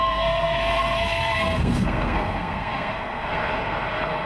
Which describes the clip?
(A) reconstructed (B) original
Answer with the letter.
A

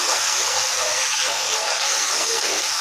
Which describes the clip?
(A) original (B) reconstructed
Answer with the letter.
B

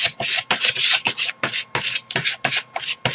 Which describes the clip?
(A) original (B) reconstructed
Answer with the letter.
A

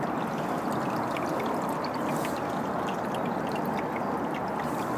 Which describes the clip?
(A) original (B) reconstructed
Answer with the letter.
A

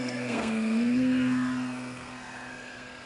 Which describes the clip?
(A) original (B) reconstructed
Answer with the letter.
B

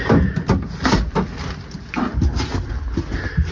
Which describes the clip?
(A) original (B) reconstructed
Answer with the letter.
A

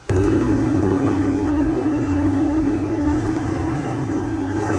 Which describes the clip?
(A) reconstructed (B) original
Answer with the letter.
A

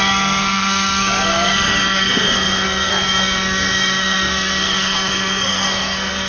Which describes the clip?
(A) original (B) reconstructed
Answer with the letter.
B